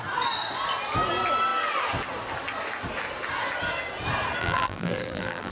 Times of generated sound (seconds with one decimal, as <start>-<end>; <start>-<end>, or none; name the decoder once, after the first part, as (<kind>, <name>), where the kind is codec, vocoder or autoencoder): 4.4-5.5 (vocoder, BigVGAN v2)